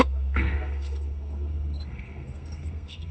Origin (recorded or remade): remade